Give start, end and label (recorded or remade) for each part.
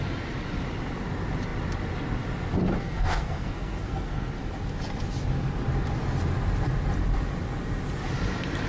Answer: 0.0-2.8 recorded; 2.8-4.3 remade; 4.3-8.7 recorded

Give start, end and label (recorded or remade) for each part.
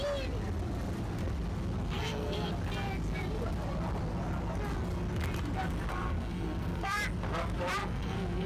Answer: 0.0-1.8 recorded; 1.8-2.5 remade; 2.5-5.9 recorded; 5.9-7.0 remade; 7.0-7.8 recorded; 7.8-8.5 remade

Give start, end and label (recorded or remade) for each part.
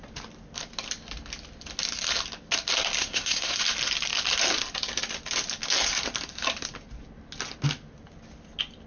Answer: 0.0-3.0 recorded; 3.0-3.6 remade; 3.6-8.9 recorded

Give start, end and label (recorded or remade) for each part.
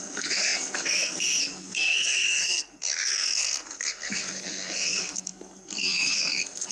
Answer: 0.0-6.7 remade